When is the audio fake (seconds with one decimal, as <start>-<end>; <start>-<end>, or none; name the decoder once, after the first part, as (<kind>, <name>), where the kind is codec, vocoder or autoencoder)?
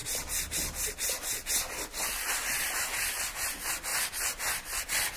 none